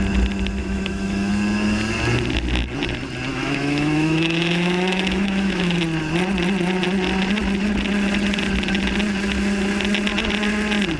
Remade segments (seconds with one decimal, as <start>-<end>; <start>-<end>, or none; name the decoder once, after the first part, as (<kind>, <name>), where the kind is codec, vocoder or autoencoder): 0.6-1.3 (autoencoder, DAC-VAE); 3.3-5.8